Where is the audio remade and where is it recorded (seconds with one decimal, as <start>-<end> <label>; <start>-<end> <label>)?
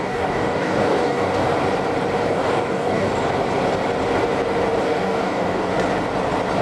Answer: 0.0-1.5 remade; 1.5-2.3 recorded; 2.3-3.1 remade; 3.1-4.8 recorded; 4.8-5.7 remade; 5.7-6.6 recorded